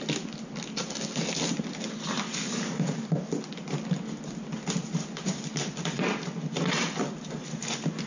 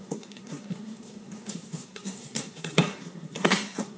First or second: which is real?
first